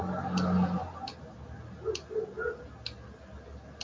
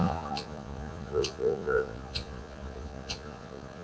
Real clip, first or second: first